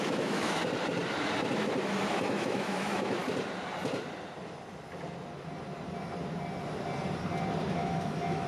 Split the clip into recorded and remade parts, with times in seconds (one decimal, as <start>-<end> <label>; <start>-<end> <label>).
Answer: 0.0-0.6 remade; 0.6-2.1 recorded; 2.1-3.2 remade; 3.2-7.7 recorded; 7.7-8.5 remade